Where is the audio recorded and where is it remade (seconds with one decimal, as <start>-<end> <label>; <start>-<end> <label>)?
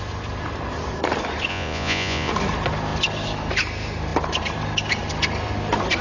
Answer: 0.0-1.5 recorded; 1.5-2.3 remade; 2.3-6.0 recorded